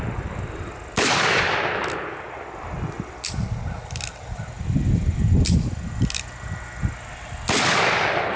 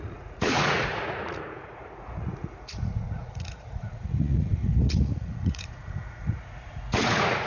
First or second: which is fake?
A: second